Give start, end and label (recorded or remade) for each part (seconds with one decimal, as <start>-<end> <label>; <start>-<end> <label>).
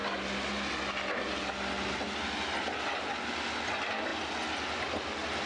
0.0-5.5 recorded